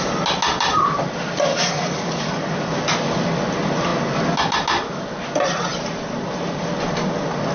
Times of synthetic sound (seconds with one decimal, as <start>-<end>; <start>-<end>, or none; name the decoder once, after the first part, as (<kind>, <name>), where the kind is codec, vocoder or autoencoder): 1.5-2.7 (codec, DAC)